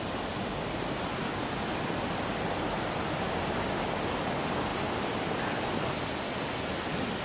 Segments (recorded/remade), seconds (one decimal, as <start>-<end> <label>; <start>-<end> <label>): 0.0-7.2 recorded